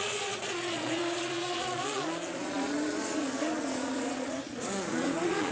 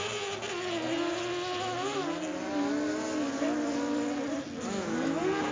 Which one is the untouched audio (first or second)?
second